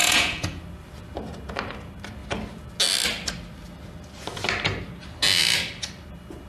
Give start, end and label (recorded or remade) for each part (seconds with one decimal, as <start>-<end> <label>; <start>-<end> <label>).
0.0-0.6 remade; 0.6-6.5 recorded